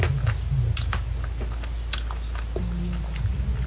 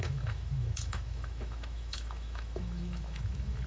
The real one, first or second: first